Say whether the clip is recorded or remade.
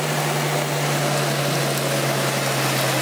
recorded